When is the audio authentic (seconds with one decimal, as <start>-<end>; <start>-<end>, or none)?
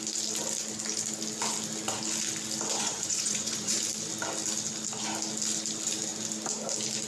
0.0-2.7; 3.8-7.1